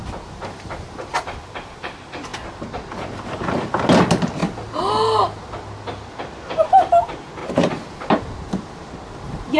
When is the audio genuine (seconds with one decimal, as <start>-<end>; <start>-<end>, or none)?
0.0-9.6